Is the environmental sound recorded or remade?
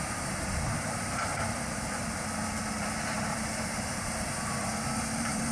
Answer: remade